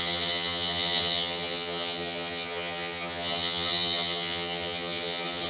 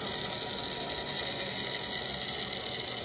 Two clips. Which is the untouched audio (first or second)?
second